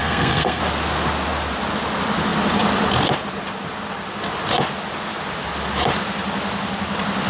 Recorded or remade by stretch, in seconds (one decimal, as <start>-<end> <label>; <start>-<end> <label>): 0.0-0.6 remade; 0.6-7.3 recorded